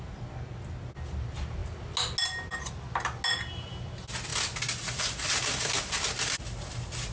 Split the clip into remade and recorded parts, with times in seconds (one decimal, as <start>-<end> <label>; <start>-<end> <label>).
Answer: 0.0-7.1 recorded